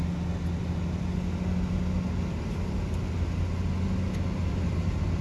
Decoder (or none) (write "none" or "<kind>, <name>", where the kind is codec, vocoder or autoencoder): none